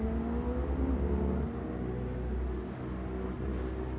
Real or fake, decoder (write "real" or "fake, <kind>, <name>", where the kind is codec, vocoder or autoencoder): real